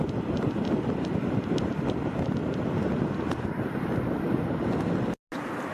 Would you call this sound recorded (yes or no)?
yes